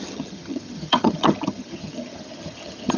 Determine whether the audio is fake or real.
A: fake